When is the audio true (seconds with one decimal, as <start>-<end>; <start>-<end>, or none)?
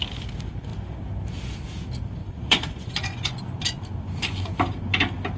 0.0-2.2; 3.4-5.4